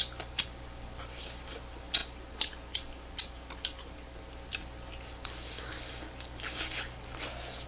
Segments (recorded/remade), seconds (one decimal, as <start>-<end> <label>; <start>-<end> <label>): 0.0-7.7 recorded